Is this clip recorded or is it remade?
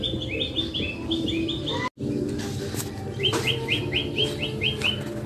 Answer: recorded